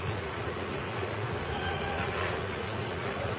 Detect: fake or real fake